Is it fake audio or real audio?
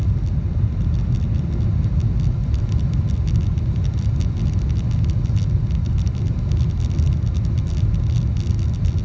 real